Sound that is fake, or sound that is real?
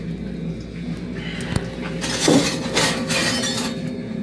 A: real